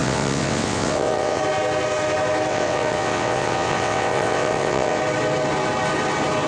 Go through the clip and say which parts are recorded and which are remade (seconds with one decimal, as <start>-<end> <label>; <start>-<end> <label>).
0.0-1.4 remade; 1.4-2.5 recorded; 2.5-5.0 remade; 5.0-6.5 recorded

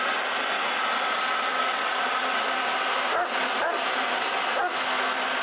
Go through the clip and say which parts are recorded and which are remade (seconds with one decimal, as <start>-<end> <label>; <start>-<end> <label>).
0.0-1.5 recorded; 1.5-2.3 remade; 2.3-5.4 recorded

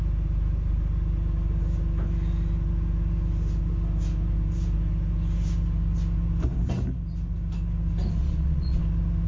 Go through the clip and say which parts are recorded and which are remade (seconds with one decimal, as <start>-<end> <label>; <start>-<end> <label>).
0.0-8.2 recorded; 8.2-8.8 remade; 8.8-9.3 recorded

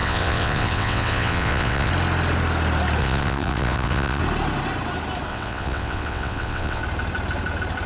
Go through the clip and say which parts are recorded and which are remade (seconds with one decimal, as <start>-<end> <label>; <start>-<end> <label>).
0.0-1.9 remade; 1.9-3.0 recorded; 3.0-4.2 remade; 4.2-5.3 recorded; 5.3-6.8 remade; 6.8-7.9 recorded

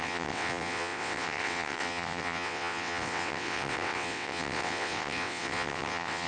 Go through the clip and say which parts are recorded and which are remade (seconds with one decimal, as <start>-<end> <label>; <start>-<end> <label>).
0.0-6.3 remade